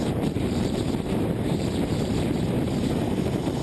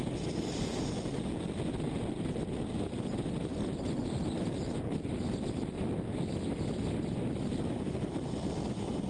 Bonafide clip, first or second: second